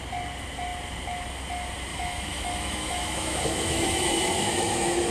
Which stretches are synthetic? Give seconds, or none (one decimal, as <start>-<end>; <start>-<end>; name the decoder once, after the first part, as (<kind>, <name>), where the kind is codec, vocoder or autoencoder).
1.9-5.1 (autoencoder, DAC-VAE)